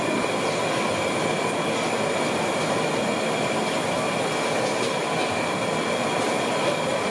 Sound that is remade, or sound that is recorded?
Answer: recorded